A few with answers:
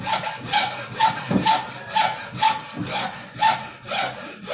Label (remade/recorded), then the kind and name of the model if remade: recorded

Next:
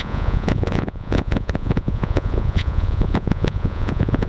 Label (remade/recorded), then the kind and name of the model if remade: remade, vocoder, Vocos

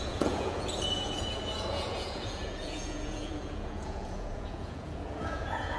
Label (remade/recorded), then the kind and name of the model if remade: remade, vocoder, Vocos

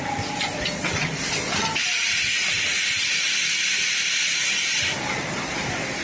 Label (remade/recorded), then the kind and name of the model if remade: recorded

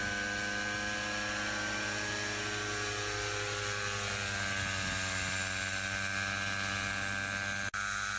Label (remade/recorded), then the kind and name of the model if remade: recorded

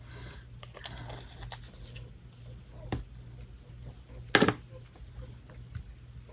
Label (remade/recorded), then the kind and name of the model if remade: recorded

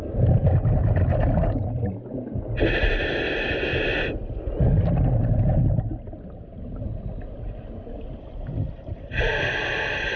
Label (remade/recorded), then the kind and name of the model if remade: recorded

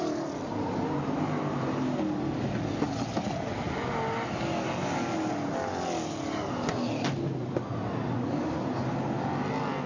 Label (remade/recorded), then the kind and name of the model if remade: recorded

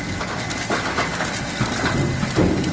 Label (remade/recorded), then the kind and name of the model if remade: recorded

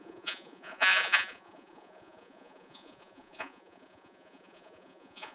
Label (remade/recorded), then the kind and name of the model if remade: remade, vocoder, Vocos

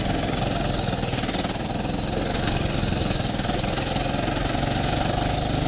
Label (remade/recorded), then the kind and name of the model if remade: recorded